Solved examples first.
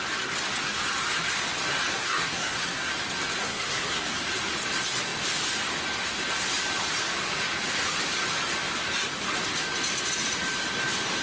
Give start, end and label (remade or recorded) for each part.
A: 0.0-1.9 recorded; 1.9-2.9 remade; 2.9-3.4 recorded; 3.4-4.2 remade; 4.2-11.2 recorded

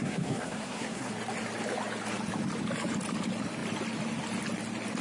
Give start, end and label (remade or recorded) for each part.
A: 0.0-1.1 remade; 1.1-5.0 recorded